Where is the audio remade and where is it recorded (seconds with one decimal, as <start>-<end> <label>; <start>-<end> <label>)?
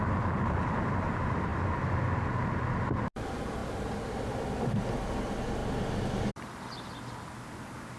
0.0-8.0 recorded